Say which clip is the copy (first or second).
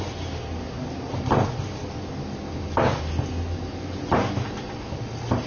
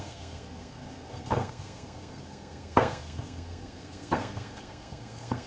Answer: second